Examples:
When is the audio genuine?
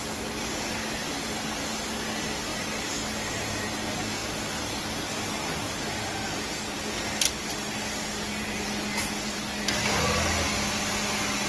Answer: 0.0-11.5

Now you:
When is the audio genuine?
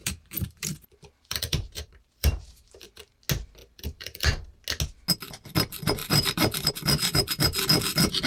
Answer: 3.2-3.6; 4.6-6.0; 6.7-8.3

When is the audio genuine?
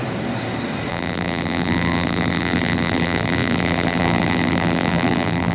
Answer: 0.0-0.9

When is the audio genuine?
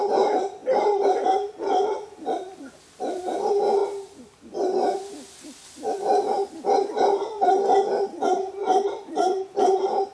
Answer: 0.0-8.6; 9.6-10.1